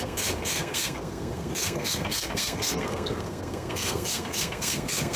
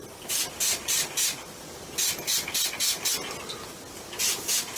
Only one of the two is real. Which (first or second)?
second